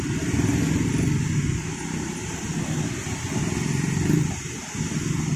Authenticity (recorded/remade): recorded